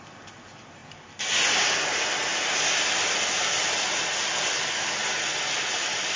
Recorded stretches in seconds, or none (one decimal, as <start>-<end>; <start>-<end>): 0.0-6.2